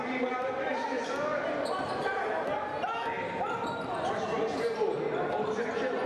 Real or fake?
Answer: real